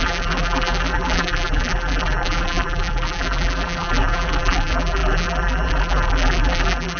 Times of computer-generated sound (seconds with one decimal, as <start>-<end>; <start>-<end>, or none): 0.0-7.0